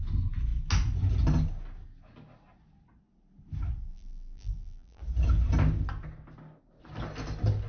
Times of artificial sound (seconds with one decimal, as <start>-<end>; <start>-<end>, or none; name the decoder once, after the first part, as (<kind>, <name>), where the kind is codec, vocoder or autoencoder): 3.9-5.0 (vocoder, BigVGAN v2)